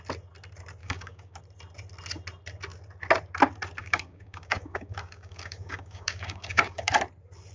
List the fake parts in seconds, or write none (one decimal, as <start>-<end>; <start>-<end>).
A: 0.8-1.4; 3.8-6.9